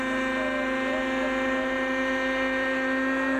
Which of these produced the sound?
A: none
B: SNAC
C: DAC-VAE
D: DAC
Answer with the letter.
A